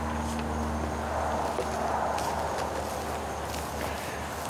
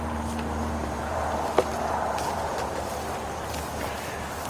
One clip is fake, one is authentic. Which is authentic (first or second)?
first